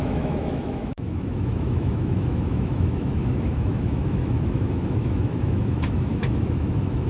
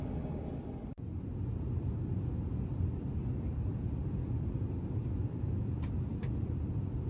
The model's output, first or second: first